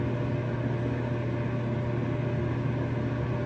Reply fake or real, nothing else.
real